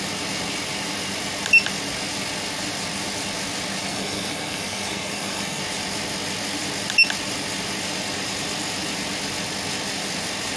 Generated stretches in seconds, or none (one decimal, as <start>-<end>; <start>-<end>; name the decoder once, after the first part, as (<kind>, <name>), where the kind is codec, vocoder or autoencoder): 3.9-5.6 (codec, SNAC)